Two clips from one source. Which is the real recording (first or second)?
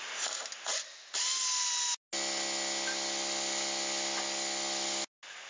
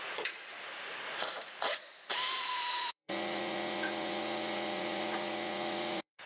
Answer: first